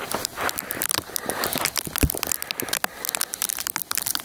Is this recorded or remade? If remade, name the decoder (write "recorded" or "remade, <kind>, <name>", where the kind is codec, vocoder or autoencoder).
recorded